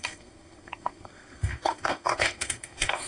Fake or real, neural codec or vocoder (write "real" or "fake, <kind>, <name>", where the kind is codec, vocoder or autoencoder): fake, codec, SNAC